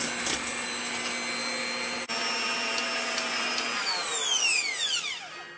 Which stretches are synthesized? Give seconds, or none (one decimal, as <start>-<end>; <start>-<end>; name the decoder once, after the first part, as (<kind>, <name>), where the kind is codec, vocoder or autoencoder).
none

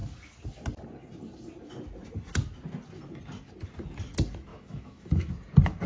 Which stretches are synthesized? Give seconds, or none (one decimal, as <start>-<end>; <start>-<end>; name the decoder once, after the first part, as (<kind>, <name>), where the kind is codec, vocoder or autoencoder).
4.5-5.3 (autoencoder, DAC-VAE)